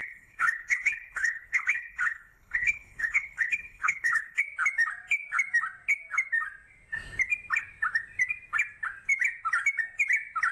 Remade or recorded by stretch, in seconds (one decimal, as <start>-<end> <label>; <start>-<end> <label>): 0.0-4.4 remade; 4.4-10.5 recorded